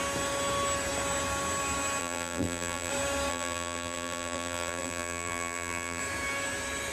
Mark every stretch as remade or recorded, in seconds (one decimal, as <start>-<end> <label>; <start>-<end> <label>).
0.0-2.0 recorded; 2.0-2.9 remade; 2.9-3.3 recorded; 3.3-6.0 remade; 6.0-6.9 recorded